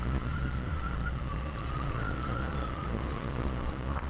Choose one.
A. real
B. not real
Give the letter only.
B